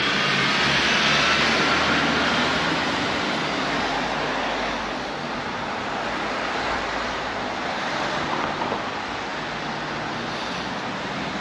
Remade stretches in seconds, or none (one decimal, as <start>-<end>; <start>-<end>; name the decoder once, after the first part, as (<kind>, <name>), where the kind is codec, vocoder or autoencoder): none